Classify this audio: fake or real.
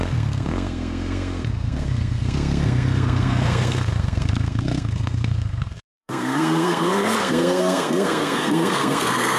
fake